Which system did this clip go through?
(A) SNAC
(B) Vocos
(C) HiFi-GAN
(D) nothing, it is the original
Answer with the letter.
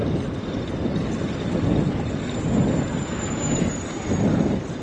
D